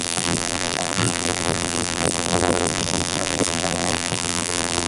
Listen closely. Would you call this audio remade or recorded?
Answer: remade